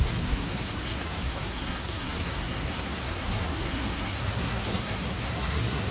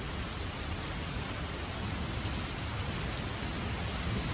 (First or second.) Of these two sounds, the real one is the second